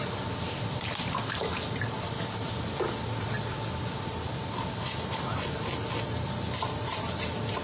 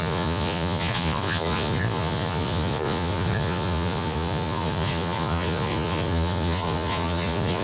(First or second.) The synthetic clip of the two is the second